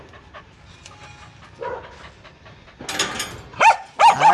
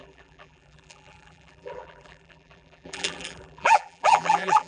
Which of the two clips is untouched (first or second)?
first